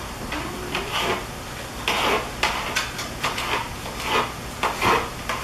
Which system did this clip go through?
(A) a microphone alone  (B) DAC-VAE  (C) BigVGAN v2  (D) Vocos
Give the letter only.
A